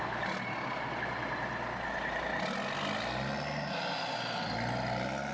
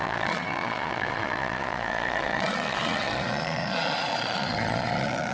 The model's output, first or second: second